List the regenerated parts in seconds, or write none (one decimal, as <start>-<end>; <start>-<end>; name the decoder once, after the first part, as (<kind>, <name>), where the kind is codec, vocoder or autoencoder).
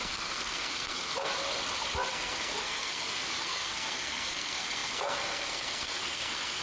0.0-1.3 (codec, SNAC); 2.1-6.6